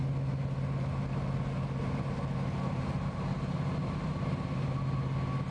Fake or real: real